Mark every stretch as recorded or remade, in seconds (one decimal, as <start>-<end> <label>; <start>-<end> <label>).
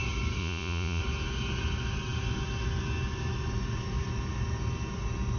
0.0-0.4 recorded; 0.4-1.0 remade; 1.0-5.4 recorded